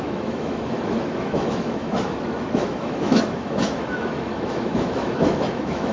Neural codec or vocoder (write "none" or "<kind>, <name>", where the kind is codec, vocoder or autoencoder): autoencoder, DAC-VAE